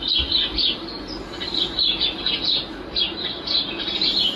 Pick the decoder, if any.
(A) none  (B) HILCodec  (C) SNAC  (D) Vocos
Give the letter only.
A